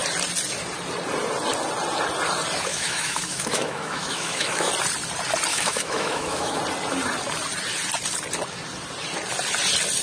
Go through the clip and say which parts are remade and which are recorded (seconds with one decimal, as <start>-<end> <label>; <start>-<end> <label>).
0.0-2.7 recorded; 2.7-4.7 remade; 4.7-5.5 recorded; 5.5-6.6 remade; 6.6-10.0 recorded